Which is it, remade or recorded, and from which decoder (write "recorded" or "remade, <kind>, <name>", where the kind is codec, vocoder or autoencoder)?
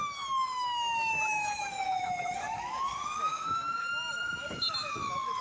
remade, autoencoder, DAC-VAE